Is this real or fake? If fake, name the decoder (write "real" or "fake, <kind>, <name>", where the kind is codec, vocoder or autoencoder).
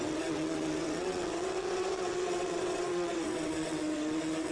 fake, vocoder, WaveNeXt